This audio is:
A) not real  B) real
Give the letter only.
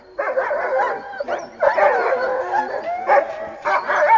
A